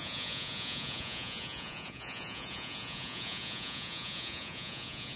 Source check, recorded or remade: remade